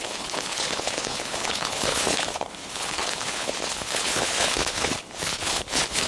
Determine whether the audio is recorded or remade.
remade